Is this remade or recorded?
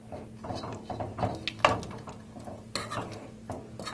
recorded